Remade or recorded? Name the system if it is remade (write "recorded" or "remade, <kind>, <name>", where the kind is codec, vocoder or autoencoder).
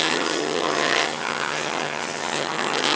remade, vocoder, HiFi-GAN